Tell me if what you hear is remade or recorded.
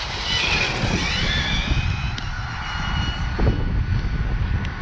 recorded